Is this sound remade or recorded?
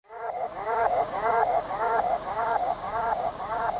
remade